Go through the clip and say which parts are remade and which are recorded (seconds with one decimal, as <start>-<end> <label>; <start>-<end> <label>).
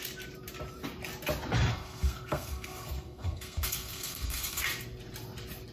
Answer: 0.0-1.7 recorded; 1.7-4.6 remade; 4.6-5.7 recorded